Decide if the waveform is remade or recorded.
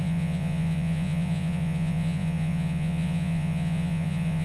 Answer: remade